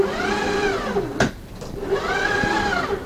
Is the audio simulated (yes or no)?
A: yes